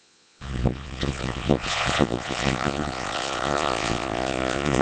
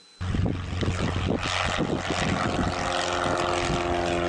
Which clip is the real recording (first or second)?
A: second